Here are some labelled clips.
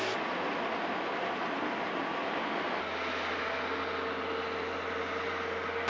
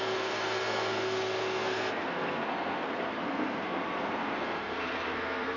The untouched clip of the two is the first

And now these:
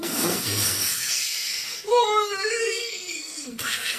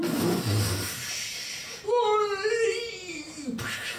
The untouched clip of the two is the second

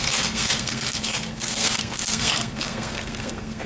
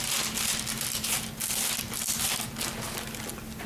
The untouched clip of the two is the second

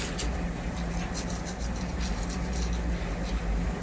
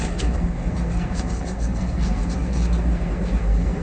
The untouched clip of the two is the first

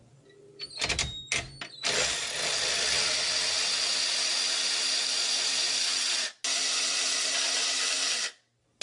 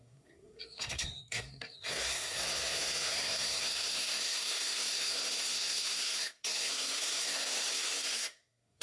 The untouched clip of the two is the first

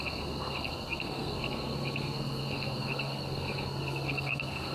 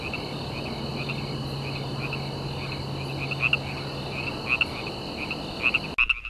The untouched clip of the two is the second